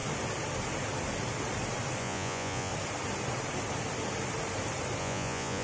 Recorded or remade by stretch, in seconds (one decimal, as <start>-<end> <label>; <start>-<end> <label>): 0.0-2.0 recorded; 2.0-2.7 remade; 2.7-5.0 recorded; 5.0-5.6 remade